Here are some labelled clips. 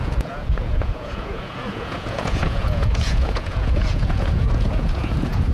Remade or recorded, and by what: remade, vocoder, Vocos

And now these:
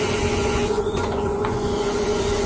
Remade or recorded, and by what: remade, vocoder, Vocos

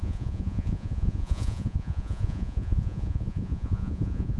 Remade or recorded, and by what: remade, vocoder, Vocos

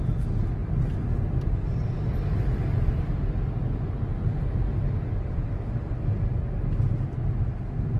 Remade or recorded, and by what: recorded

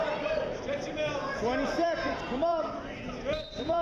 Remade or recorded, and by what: remade, vocoder, BigVGAN v2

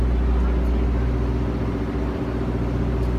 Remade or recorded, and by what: recorded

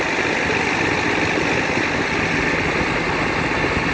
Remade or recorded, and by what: recorded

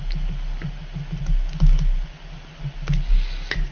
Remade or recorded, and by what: recorded